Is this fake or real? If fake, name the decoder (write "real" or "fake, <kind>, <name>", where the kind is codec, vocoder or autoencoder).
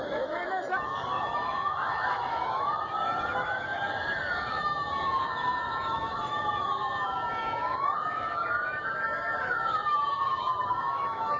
fake, autoencoder, DAC-VAE